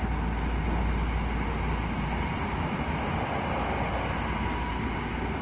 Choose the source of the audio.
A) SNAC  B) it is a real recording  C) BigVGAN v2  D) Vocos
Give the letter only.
B